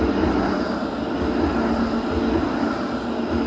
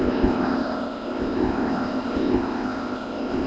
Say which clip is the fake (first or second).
second